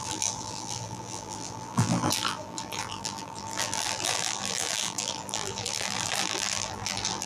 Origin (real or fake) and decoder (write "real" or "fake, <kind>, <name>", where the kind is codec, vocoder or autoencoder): fake, vocoder, BigVGAN v2